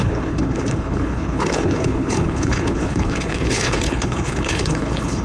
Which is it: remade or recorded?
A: remade